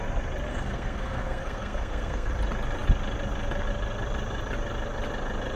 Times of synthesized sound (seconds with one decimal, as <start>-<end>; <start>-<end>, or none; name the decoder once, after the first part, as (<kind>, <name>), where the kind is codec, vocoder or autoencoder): 0.5-2.3 (codec, SNAC)